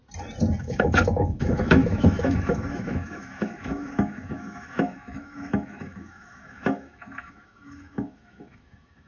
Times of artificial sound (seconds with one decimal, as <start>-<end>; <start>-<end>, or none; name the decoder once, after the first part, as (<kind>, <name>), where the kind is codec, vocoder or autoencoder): 0.6-9.1 (autoencoder, DAC-VAE)